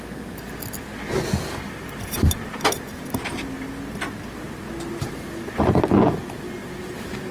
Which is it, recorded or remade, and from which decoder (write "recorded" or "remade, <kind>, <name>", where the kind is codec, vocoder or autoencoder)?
recorded